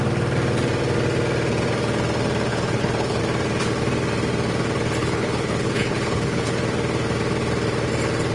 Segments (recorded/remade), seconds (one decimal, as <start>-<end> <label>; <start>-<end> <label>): 0.0-2.5 recorded; 2.5-3.2 remade; 3.2-5.0 recorded; 5.0-6.6 remade; 6.6-8.3 recorded